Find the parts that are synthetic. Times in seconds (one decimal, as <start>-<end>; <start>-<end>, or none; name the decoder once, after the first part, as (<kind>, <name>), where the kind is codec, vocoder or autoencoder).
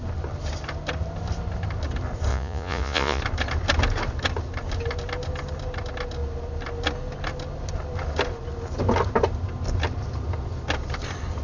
2.3-3.2 (vocoder, Vocos)